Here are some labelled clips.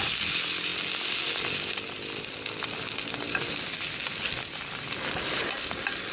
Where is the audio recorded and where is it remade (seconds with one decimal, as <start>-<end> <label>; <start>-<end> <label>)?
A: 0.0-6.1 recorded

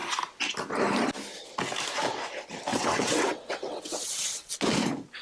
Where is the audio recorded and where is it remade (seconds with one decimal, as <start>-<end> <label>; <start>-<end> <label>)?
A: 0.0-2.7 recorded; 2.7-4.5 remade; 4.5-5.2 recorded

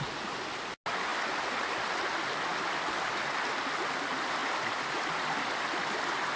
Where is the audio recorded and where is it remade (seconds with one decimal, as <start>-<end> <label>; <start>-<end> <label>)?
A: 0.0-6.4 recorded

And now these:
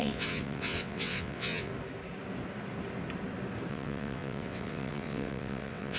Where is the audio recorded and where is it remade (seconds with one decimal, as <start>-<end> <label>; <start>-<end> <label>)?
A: 0.0-1.7 remade; 1.7-3.7 recorded; 3.7-6.0 remade

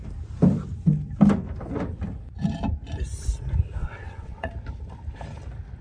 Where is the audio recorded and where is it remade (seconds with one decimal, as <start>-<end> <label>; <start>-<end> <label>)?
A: 0.0-3.8 recorded; 3.8-4.5 remade; 4.5-5.8 recorded

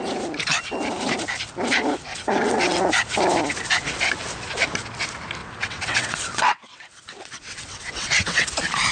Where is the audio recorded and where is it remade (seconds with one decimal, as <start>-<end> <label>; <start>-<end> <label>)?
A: 0.0-2.1 recorded; 2.1-2.9 remade; 2.9-5.4 recorded; 5.4-8.5 remade; 8.5-8.9 recorded

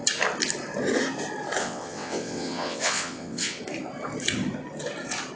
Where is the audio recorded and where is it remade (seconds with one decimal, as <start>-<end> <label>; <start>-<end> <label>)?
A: 0.0-1.6 recorded; 1.6-3.6 remade; 3.6-5.3 recorded